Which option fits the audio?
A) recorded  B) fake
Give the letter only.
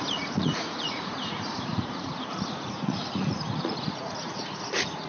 B